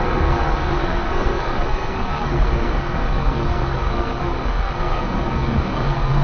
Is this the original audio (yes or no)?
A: no